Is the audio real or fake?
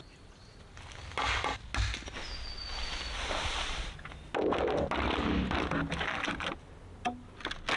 real